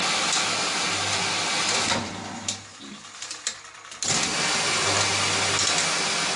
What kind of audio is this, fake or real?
real